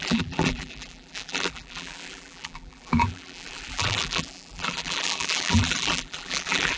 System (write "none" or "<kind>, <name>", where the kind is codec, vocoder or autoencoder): vocoder, BigVGAN v2